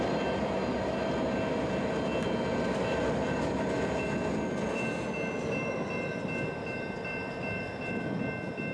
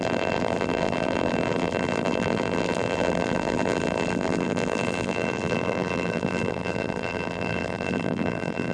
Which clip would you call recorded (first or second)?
first